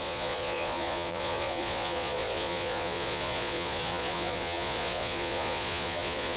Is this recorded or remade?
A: remade